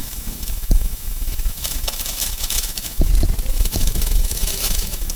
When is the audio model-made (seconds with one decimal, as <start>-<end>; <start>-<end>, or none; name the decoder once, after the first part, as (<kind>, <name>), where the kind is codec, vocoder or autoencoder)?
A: 0.0-3.1 (autoencoder, DAC-VAE); 3.5-5.2